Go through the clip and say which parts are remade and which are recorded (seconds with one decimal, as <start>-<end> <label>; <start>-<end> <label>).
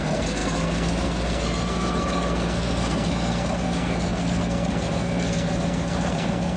0.0-6.6 remade